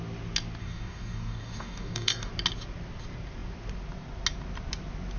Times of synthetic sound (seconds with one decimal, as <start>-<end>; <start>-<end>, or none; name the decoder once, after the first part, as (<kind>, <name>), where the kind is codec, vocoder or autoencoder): 0.6-2.3 (codec, DAC)